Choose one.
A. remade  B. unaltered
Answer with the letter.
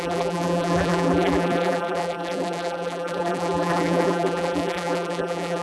A